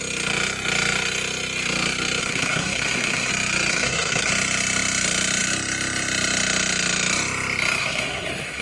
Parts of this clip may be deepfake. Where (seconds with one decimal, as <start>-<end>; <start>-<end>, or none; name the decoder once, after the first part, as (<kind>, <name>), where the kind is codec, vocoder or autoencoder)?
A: 2.2-3.3 (codec, SNAC); 3.7-4.3; 7.8-8.6